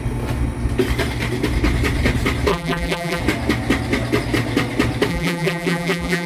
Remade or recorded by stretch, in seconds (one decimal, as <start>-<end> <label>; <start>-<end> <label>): 0.0-2.5 recorded; 2.5-3.2 remade; 3.2-5.1 recorded; 5.1-6.3 remade